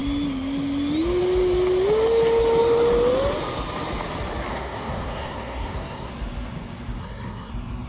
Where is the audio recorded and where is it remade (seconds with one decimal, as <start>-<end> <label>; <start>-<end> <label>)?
0.0-4.5 recorded; 4.5-6.1 remade; 6.1-7.0 recorded; 7.0-7.5 remade; 7.5-7.9 recorded